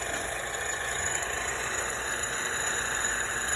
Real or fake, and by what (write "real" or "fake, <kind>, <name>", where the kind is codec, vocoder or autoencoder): fake, vocoder, Vocos